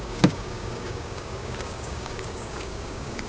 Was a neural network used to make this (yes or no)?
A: yes